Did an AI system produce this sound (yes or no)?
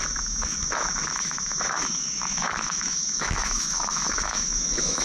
yes